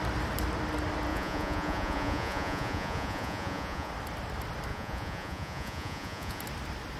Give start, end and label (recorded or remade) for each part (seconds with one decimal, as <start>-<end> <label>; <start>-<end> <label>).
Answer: 0.0-1.1 recorded; 1.1-3.9 remade; 3.9-4.7 recorded; 4.7-6.4 remade; 6.4-7.0 recorded